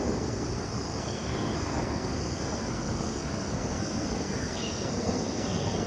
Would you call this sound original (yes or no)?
no